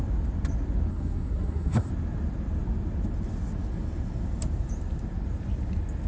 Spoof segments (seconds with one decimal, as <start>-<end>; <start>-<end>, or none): 0.9-1.9